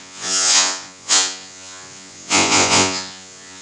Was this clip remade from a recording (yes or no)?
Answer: yes